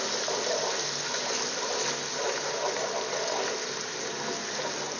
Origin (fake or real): real